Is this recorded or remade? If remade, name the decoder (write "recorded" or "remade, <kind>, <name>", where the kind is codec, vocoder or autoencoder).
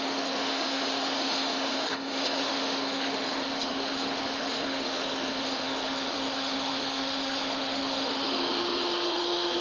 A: remade, autoencoder, DAC-VAE